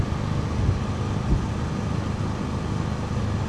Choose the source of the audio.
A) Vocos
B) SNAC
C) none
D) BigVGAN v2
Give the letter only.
C